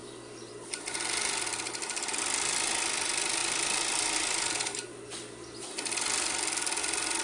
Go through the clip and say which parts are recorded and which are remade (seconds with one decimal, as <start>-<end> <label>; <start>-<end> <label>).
0.0-7.2 recorded

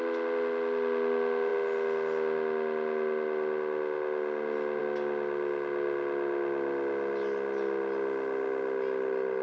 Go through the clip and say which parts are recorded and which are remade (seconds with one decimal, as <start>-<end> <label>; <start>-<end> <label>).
0.0-9.4 recorded

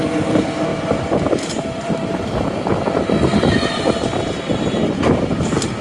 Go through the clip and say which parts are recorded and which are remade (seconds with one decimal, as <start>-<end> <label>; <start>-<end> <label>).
0.0-5.8 recorded

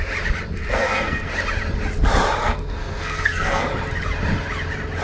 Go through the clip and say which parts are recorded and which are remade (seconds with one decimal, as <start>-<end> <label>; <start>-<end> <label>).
0.0-0.6 recorded; 0.6-1.3 remade; 1.3-2.4 recorded; 2.4-3.7 remade; 3.7-5.0 recorded